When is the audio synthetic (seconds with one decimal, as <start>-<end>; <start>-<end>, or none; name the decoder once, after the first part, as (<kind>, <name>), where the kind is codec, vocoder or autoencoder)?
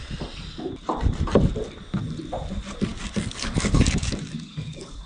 2.9-5.1 (codec, DAC)